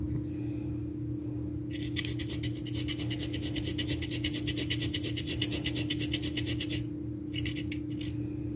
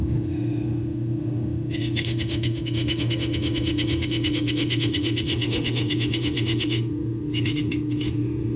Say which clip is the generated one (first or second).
second